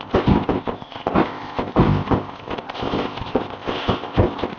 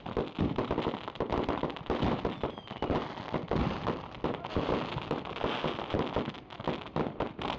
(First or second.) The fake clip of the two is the first